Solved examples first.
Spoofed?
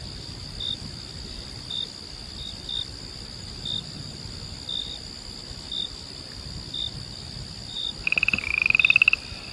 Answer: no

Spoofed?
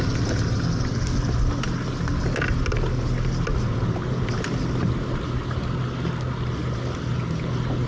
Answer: no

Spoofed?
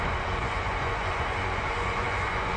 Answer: yes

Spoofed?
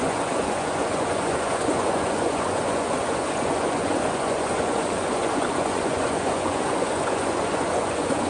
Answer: yes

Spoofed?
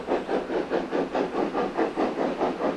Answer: no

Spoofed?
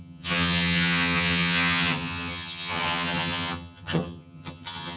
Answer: yes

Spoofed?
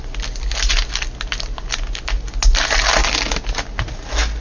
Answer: no